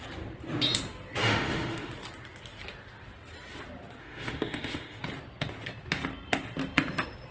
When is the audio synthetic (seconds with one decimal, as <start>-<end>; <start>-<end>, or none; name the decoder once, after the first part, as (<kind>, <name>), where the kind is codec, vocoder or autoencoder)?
1.2-1.9 (autoencoder, DAC-VAE); 4.0-5.0